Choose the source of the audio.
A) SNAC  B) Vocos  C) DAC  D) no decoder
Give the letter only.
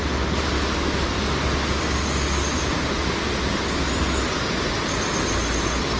D